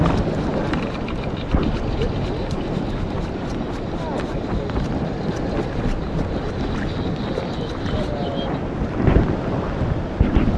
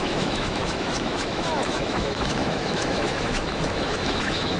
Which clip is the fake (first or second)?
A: second